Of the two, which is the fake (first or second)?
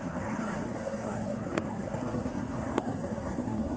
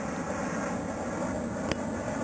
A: first